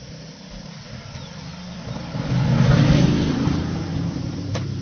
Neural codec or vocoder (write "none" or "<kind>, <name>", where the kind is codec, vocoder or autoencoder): vocoder, BigVGAN v2